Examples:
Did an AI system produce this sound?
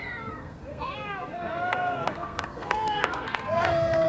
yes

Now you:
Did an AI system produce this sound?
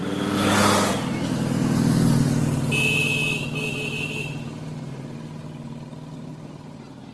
no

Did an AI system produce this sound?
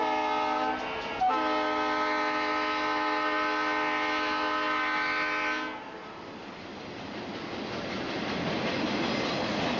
no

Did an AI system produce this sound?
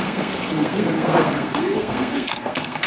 yes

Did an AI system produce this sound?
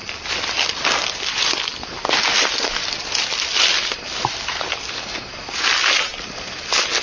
no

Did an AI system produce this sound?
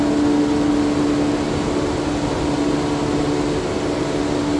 no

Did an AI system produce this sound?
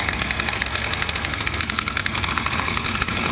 yes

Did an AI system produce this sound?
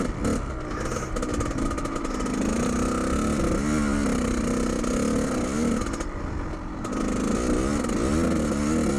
no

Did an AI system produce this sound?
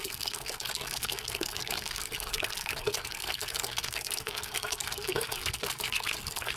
yes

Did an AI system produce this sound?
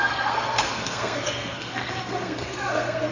yes